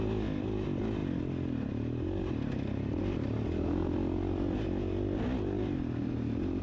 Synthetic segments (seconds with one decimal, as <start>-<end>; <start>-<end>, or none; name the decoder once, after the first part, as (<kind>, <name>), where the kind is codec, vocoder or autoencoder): none